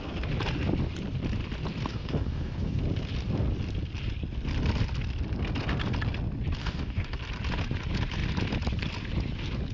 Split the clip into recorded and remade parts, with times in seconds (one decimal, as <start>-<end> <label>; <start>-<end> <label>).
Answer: 0.0-1.9 recorded; 1.9-2.8 remade; 2.8-6.6 recorded; 6.6-7.2 remade; 7.2-9.7 recorded